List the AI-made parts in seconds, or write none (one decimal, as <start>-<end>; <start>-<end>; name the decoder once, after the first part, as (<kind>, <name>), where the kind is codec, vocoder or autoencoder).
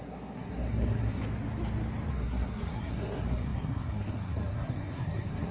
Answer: 0.0-1.2 (codec, SNAC); 2.1-5.5